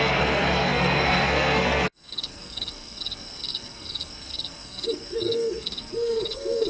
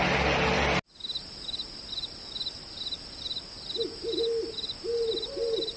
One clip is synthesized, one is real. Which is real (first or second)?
second